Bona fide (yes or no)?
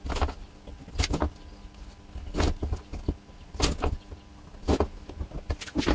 yes